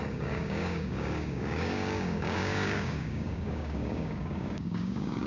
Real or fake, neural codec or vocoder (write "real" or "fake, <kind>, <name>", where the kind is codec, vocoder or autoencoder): fake, codec, DAC